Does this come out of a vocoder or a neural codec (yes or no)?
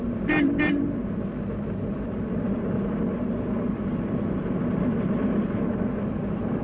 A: no